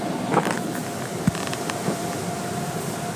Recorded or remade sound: recorded